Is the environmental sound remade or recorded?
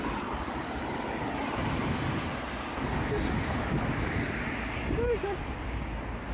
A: recorded